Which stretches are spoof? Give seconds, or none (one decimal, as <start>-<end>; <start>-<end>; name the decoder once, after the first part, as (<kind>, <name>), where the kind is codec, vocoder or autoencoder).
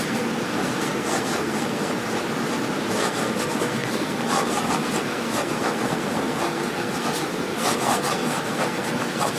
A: 0.0-1.9 (codec, SNAC); 2.9-9.4